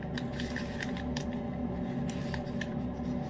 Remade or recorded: recorded